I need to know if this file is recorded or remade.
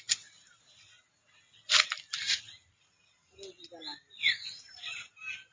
recorded